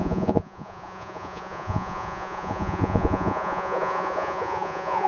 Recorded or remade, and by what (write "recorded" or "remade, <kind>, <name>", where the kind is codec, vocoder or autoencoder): remade, vocoder, Vocos